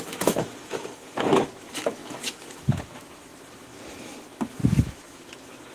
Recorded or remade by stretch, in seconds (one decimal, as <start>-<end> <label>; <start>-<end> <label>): 0.0-5.7 remade